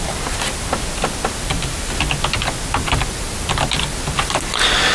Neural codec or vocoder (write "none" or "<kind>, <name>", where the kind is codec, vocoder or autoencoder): none